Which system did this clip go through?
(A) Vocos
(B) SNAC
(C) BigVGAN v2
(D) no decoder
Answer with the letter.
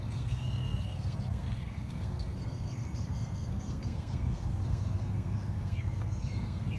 B